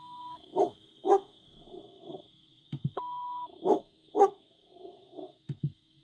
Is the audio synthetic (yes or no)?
yes